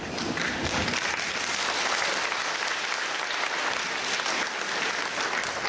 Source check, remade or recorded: recorded